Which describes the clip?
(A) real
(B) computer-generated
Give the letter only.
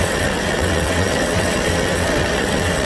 B